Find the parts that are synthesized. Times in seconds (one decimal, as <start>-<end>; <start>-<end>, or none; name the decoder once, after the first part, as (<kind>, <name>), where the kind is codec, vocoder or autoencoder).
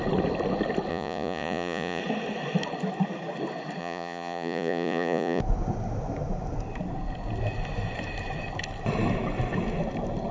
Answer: 0.9-2.0 (vocoder, Vocos); 3.8-5.4